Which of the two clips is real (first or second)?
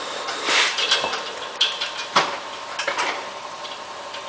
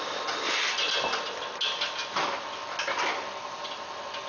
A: second